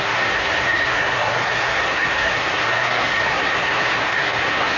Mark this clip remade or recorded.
remade